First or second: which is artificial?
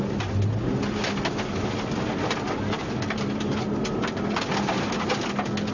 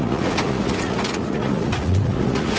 second